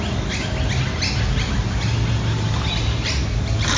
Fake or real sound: real